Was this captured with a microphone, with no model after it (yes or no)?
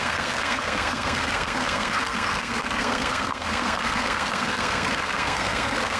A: no